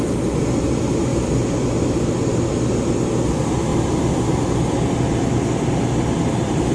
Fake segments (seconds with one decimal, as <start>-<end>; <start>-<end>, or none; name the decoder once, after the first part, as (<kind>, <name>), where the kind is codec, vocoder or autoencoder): none